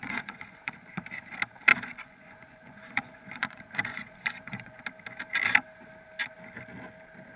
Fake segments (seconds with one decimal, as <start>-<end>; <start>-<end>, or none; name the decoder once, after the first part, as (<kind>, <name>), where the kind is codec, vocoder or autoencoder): 0.0-1.0 (vocoder, Vocos); 1.7-4.8

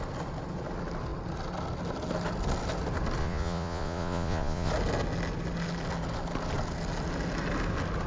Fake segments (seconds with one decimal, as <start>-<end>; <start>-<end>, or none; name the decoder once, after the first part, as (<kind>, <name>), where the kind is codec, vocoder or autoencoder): 3.2-4.7 (vocoder, Vocos)

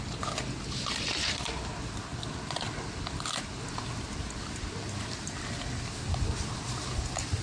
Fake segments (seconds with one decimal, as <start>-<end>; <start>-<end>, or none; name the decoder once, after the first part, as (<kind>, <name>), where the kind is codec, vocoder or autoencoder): none

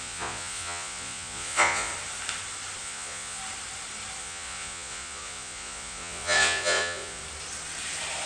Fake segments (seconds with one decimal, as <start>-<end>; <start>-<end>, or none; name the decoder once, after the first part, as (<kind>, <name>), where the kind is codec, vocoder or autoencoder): 0.0-1.9 (vocoder, Vocos); 2.8-3.4; 4.2-7.2

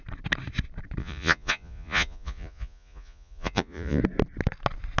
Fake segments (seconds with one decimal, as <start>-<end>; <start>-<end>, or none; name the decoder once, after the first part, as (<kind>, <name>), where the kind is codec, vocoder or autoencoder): 1.0-4.0 (vocoder, Vocos)

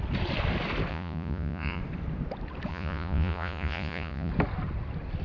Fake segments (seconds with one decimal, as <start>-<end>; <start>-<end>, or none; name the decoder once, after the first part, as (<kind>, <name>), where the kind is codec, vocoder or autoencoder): 0.9-1.8 (vocoder, Vocos); 2.7-4.3

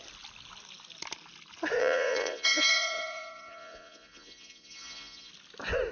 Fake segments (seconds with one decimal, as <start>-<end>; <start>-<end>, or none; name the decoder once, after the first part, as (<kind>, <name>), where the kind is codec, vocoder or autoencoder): 1.8-5.3 (vocoder, Vocos)

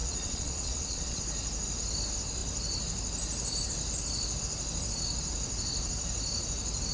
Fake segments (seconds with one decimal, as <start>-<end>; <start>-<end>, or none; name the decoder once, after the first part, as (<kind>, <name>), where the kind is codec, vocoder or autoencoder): 0.0-1.2 (vocoder, Vocos)